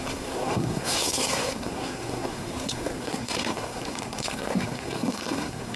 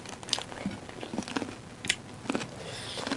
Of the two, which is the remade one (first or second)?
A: first